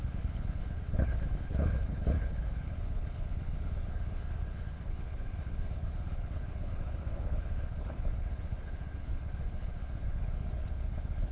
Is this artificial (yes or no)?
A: yes